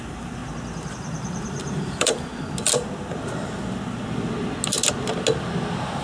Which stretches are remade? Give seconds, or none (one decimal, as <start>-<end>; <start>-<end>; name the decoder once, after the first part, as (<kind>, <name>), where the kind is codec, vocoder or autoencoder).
0.0-0.4 (vocoder, BigVGAN v2); 0.9-2.3